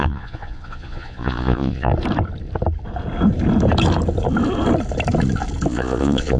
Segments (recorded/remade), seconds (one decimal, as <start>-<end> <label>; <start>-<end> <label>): 0.0-1.9 remade; 1.9-5.7 recorded; 5.7-6.4 remade